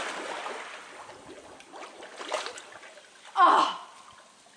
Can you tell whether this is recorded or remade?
recorded